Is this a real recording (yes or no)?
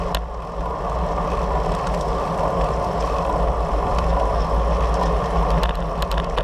yes